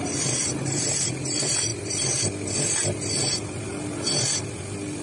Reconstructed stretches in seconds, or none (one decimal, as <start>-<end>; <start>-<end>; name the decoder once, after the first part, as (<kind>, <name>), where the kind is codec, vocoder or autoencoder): none